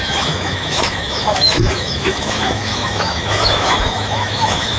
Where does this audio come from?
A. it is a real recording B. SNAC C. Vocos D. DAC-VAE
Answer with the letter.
D